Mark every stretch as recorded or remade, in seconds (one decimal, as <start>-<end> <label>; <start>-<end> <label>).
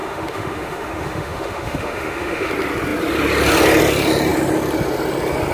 0.0-2.5 remade; 2.5-5.5 recorded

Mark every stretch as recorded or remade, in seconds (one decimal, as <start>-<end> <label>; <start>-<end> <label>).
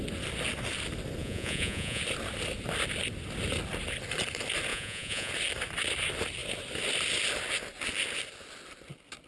0.0-1.2 recorded; 1.2-2.0 remade; 2.0-4.7 recorded; 4.7-5.3 remade; 5.3-9.3 recorded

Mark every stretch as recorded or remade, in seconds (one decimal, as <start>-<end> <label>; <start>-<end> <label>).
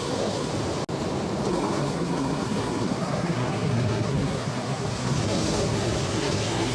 0.0-0.5 remade; 0.5-1.5 recorded; 1.5-6.7 remade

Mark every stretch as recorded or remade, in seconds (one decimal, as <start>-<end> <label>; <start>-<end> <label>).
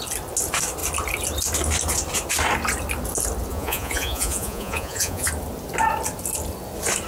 0.0-3.5 recorded; 3.5-5.3 remade; 5.3-7.1 recorded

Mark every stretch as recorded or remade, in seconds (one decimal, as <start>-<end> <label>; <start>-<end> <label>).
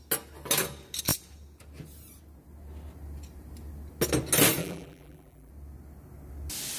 0.0-4.6 recorded; 4.6-5.5 remade; 5.5-6.8 recorded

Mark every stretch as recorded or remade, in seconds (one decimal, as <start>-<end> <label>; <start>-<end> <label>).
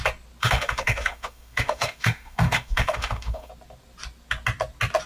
0.0-0.4 recorded; 0.4-3.5 remade; 3.5-5.1 recorded